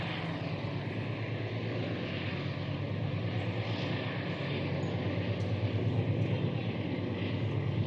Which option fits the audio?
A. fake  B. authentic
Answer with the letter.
B